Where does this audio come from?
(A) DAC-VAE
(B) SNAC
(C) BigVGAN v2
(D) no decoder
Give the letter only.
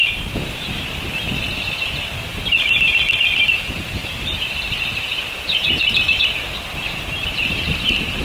C